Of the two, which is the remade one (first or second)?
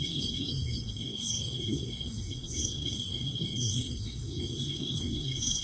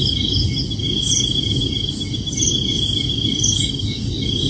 first